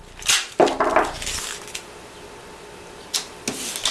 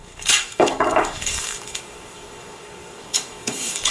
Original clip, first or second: first